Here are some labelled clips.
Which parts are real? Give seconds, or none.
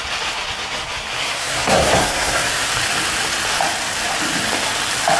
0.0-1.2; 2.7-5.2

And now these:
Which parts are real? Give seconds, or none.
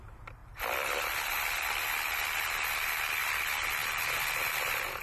0.0-0.4; 2.5-3.2; 4.0-5.0